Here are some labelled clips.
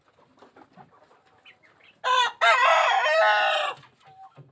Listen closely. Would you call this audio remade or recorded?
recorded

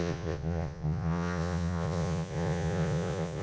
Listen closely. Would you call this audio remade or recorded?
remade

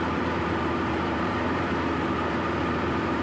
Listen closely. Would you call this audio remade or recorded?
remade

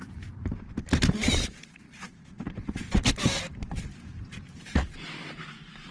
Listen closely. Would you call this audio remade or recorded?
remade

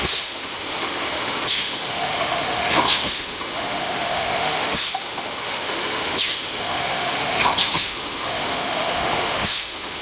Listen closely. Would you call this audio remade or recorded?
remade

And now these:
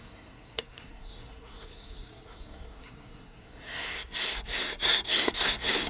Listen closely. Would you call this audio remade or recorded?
remade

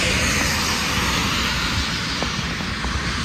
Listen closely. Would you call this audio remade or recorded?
recorded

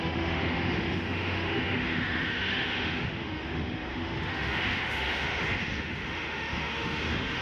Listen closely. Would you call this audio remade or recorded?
remade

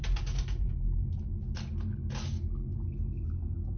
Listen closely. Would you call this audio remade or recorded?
recorded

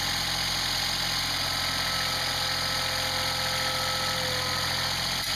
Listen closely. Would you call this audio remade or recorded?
recorded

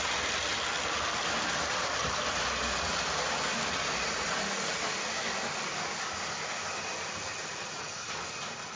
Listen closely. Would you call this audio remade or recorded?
recorded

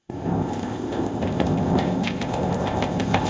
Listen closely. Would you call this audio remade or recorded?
remade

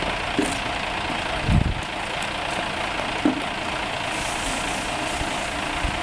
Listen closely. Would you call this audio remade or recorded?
recorded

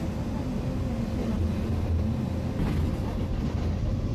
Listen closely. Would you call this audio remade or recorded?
recorded